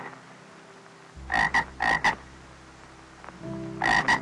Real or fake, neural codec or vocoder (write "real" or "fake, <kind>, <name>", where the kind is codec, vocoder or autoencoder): real